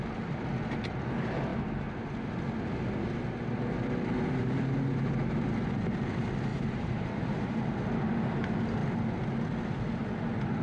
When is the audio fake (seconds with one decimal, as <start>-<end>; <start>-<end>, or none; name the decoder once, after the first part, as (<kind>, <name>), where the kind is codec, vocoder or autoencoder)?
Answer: 6.5-7.6 (vocoder, BigVGAN v2)